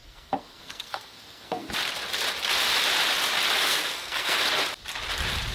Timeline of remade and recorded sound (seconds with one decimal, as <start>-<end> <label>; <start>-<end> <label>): 0.0-1.7 remade; 1.7-3.6 recorded; 3.6-4.4 remade; 4.4-5.5 recorded